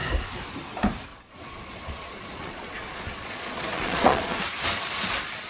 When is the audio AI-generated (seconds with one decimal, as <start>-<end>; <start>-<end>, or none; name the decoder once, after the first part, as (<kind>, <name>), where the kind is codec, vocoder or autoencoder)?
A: 1.1-4.4 (vocoder, Vocos)